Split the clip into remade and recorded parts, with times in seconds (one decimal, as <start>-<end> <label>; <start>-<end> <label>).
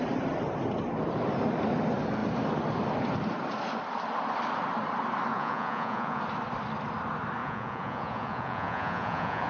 0.0-5.3 recorded; 5.3-6.2 remade; 6.2-7.4 recorded; 7.4-9.5 remade